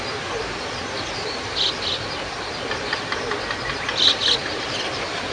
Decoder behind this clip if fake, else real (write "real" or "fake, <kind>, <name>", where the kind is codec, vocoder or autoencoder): real